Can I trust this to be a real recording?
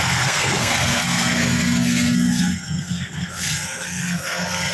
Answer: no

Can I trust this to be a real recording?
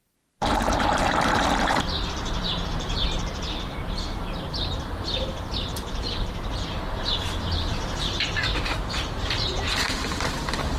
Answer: no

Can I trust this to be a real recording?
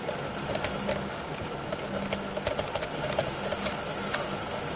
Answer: yes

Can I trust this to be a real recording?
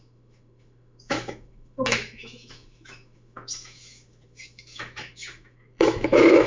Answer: no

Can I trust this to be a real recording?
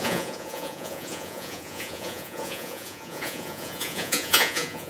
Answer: no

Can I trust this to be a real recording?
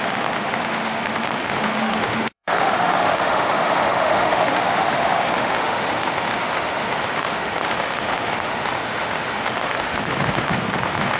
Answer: no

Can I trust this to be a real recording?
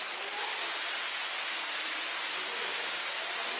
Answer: yes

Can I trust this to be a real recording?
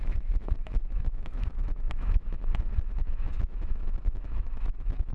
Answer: no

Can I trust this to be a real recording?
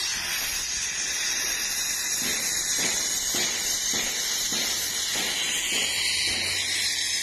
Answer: yes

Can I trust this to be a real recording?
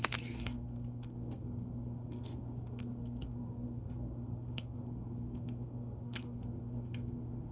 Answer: no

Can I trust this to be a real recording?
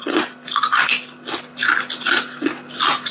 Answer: yes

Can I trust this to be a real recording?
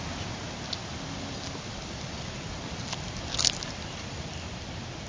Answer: yes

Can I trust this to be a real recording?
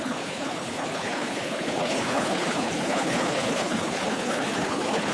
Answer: no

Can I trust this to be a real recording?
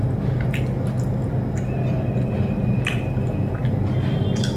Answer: yes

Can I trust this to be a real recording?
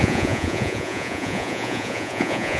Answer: no